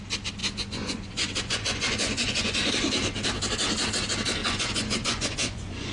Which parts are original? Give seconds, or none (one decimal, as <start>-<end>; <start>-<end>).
0.0-0.4; 2.7-4.4